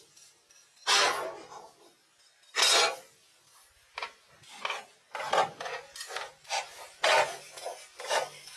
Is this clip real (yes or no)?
yes